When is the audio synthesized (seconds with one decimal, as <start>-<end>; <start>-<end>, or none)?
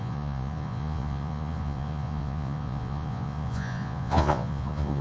0.0-5.0